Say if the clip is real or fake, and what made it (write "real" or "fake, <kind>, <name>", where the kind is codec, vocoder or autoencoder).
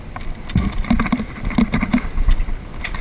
real